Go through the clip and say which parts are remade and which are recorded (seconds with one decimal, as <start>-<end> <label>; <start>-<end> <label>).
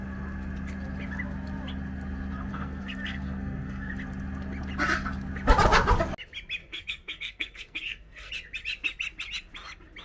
0.0-2.5 recorded; 2.5-3.9 remade; 3.9-6.6 recorded; 6.6-8.3 remade; 8.3-10.0 recorded